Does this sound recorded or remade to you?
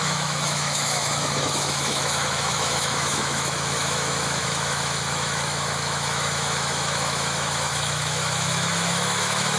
remade